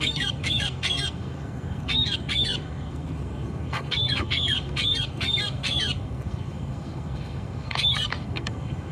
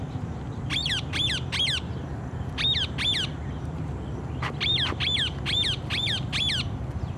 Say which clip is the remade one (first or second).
first